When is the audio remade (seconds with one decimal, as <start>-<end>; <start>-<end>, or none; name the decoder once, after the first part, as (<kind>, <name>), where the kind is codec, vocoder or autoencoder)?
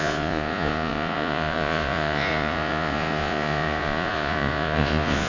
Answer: 0.0-5.3 (vocoder, Vocos)